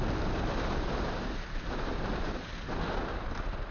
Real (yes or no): yes